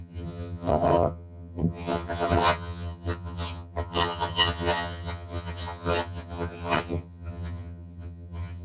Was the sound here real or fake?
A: fake